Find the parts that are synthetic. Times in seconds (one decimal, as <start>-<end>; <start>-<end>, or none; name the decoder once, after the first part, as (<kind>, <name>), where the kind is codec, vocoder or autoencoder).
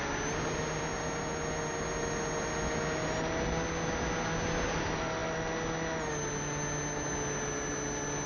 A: none